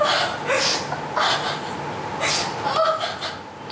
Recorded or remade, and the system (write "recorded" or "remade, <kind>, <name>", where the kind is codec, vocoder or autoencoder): recorded